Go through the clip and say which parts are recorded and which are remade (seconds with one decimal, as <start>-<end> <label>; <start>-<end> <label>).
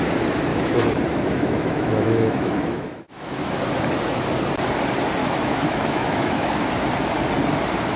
0.0-0.5 recorded; 0.5-3.6 remade; 3.6-5.2 recorded; 5.2-6.5 remade; 6.5-8.0 recorded